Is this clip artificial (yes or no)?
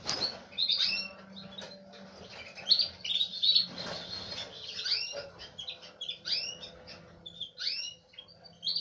no